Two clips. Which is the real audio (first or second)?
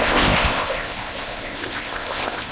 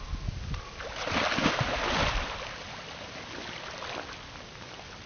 second